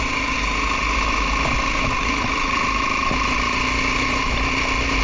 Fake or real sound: real